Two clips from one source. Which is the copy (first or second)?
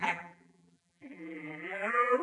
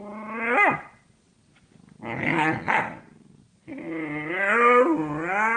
first